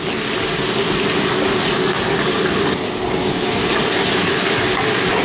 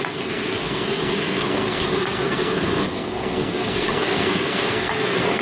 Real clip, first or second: first